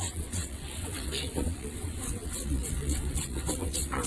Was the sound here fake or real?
fake